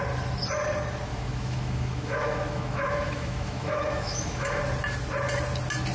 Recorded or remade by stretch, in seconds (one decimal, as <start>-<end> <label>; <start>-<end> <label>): 0.0-1.1 recorded; 1.1-4.6 remade; 4.6-5.9 recorded